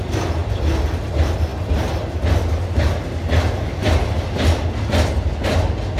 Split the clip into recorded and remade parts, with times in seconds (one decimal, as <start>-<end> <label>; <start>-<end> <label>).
0.0-6.0 recorded